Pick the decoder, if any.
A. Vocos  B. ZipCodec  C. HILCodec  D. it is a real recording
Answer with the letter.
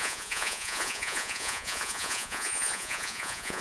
A